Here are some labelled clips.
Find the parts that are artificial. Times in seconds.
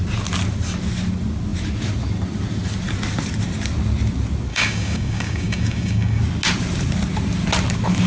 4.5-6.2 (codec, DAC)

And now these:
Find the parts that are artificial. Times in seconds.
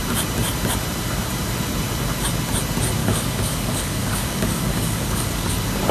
3.0-5.5 (codec, DAC)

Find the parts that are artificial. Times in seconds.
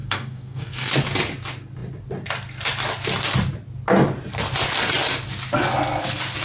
0.0-0.9 (codec, DAC)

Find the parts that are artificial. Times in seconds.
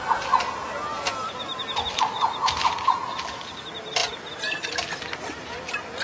none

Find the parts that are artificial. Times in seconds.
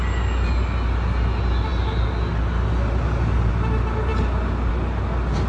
none